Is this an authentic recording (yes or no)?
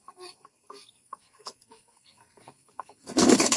no